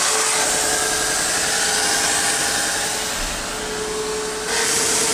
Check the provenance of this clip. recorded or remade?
recorded